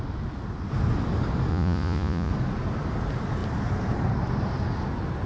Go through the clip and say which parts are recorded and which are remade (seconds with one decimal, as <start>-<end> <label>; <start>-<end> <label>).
0.0-1.5 recorded; 1.5-2.3 remade; 2.3-5.3 recorded